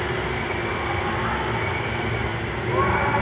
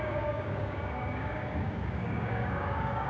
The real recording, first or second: first